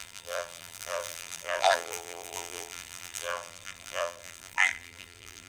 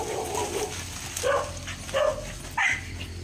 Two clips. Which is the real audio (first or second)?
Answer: second